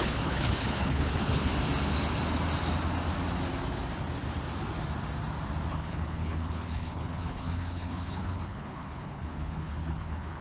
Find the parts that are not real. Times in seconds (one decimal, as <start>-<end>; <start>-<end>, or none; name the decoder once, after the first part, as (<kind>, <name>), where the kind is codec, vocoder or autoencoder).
0.0-1.5 (codec, HILCodec); 5.7-10.4